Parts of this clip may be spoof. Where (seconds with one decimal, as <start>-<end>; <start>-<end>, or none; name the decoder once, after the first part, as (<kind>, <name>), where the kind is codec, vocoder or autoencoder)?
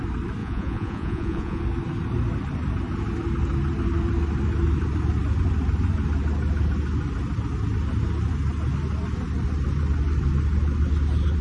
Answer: 0.4-1.6 (vocoder, Vocos)